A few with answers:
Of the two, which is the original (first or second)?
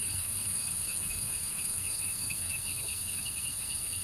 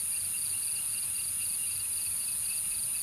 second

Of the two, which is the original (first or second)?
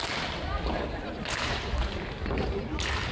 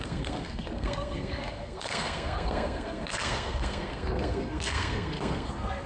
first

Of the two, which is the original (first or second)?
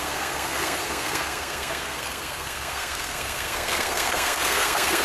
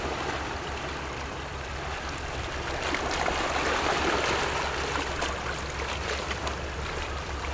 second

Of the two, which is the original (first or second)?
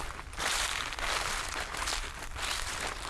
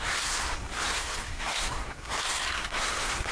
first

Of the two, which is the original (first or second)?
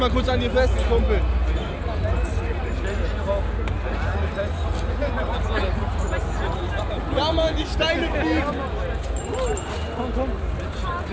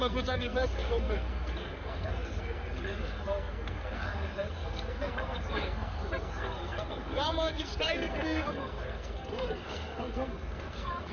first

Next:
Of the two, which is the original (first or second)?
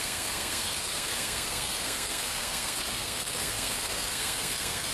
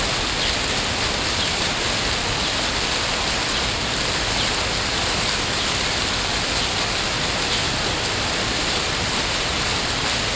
second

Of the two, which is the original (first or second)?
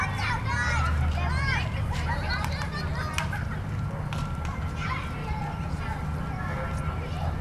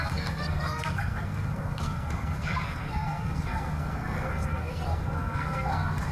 first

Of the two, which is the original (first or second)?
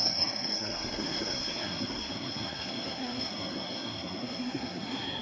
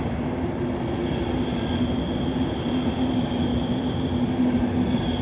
second